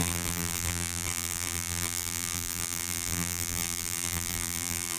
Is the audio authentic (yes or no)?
no